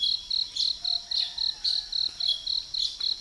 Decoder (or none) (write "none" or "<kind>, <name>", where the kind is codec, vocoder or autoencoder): none